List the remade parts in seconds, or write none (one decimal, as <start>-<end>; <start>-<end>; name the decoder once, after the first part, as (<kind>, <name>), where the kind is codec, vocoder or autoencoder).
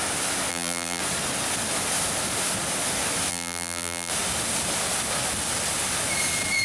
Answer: 0.5-1.0 (vocoder, BigVGAN v2); 3.3-4.1